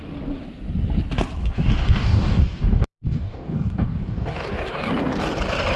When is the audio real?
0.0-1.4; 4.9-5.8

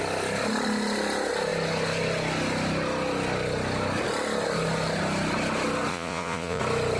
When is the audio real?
0.0-5.9; 6.6-7.0